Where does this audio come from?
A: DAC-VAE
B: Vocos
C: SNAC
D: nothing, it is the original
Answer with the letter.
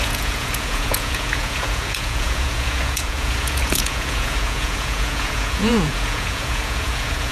B